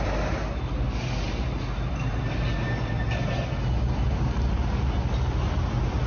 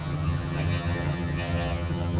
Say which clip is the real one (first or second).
first